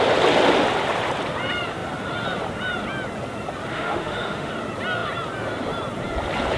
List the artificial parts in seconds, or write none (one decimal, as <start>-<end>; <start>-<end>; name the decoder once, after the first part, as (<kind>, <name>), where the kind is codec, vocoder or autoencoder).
3.7-4.5 (autoencoder, DAC-VAE)